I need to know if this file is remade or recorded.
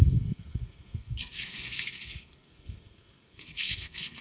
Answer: remade